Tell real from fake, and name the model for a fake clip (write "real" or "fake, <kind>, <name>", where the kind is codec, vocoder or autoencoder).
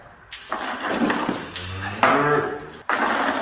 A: real